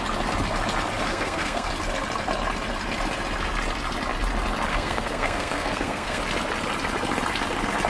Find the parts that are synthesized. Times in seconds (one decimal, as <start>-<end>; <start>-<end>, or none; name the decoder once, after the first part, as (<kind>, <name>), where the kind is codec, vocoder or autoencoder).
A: 1.1-1.7 (codec, SNAC); 4.7-6.2